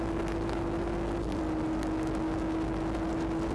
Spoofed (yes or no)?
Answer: no